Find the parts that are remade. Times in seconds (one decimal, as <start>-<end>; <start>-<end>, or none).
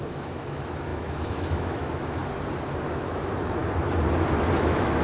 0.0-2.2; 2.9-3.6; 4.6-5.0